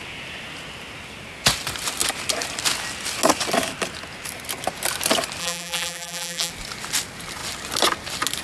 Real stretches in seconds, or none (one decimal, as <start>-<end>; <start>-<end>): 0.0-5.4; 6.5-8.4